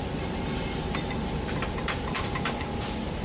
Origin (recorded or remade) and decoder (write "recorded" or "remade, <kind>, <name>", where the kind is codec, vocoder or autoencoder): remade, vocoder, BigVGAN v2